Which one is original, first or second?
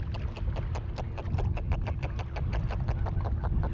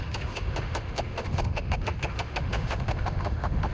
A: first